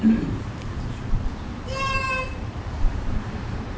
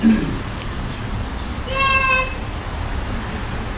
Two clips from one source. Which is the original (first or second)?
second